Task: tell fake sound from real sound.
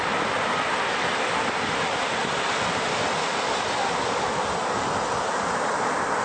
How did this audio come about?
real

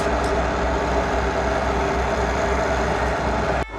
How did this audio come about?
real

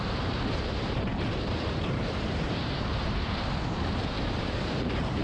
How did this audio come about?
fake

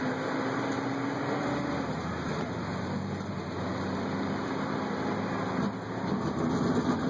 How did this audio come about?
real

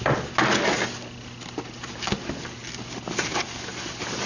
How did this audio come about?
real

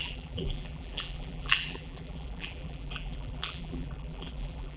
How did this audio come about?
fake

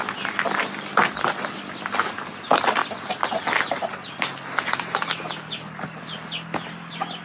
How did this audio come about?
real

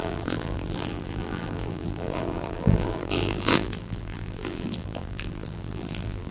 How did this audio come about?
fake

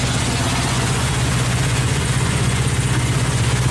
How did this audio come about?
fake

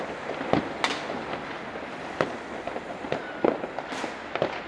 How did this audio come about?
real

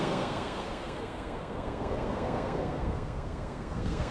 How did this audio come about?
fake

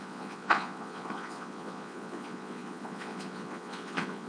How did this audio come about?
fake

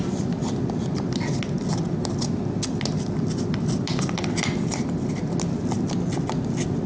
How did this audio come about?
real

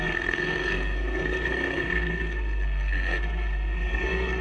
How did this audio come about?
fake